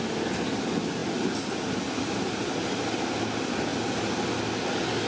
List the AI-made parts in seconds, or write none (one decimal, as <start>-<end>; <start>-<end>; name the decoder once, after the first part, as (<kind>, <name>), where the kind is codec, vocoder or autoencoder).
none